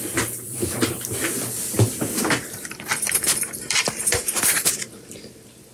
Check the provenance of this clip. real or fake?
fake